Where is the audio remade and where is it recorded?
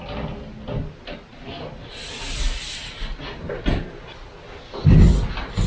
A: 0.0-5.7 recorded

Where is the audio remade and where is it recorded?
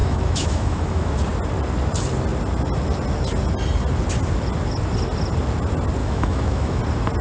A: 0.0-1.2 remade; 1.2-6.0 recorded; 6.0-6.8 remade; 6.8-7.2 recorded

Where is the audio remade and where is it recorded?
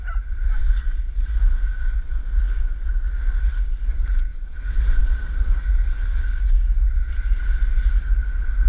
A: 0.0-8.7 recorded